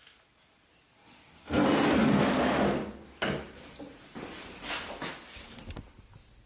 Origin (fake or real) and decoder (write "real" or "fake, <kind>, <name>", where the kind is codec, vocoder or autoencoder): real